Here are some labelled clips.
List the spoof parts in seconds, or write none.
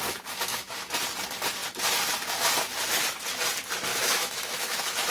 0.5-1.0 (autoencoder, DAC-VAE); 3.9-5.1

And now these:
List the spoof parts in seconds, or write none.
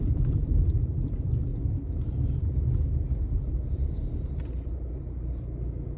none